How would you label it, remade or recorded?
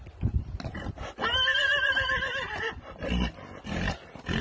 recorded